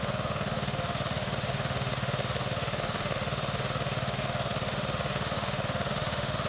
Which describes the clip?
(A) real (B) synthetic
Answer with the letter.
B